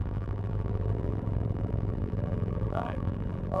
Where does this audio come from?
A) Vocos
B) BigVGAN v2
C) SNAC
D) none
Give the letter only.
B